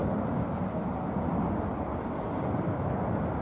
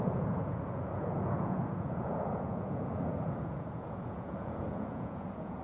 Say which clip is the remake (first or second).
second